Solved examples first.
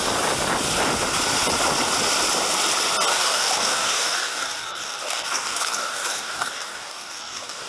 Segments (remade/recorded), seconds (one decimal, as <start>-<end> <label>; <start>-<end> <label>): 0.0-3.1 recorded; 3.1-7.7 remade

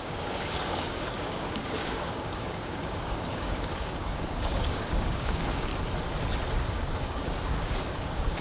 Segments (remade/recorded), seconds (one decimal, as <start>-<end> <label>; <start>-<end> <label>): 0.0-5.7 remade; 5.7-6.5 recorded; 6.5-8.4 remade

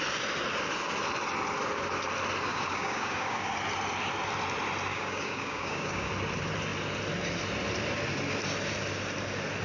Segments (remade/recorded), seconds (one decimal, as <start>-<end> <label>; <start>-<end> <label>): 0.0-2.5 recorded; 2.5-3.5 remade; 3.5-4.9 recorded; 4.9-6.1 remade; 6.1-9.6 recorded

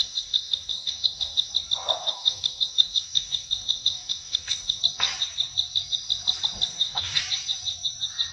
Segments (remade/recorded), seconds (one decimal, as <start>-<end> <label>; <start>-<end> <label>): 0.0-1.5 remade; 1.5-2.0 recorded; 2.0-4.8 remade; 4.8-6.7 recorded; 6.7-7.2 remade; 7.2-8.3 recorded

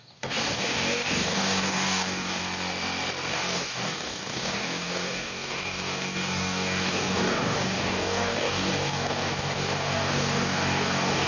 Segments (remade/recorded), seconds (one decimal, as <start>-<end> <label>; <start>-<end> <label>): 0.0-2.4 remade; 2.4-3.3 recorded; 3.3-11.3 remade